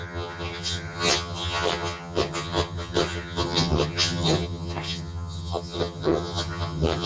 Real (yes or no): no